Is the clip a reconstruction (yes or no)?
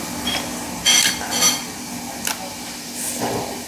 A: no